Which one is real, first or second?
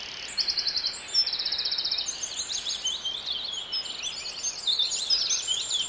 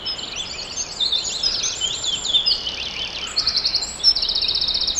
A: first